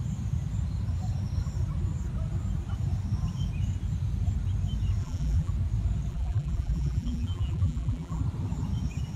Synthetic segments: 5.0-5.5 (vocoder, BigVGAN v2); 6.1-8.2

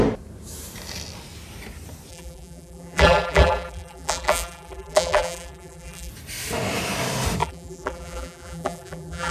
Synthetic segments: 2.1-6.1 (vocoder, BigVGAN v2); 7.4-9.3

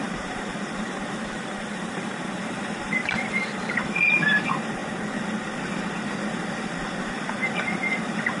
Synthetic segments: 0.0-4.8 (vocoder, BigVGAN v2); 6.6-8.4

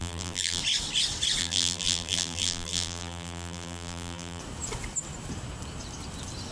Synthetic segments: 0.0-0.6 (vocoder, BigVGAN v2); 1.4-4.4

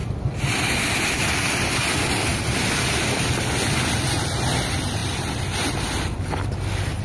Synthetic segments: 0.0-0.7 (vocoder, BigVGAN v2)

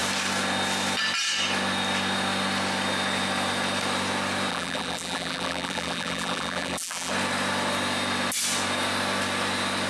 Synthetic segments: 4.5-7.1 (vocoder, BigVGAN v2)

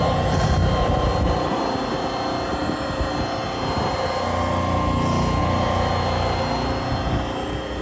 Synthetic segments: none